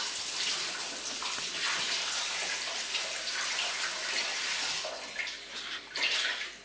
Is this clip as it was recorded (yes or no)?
yes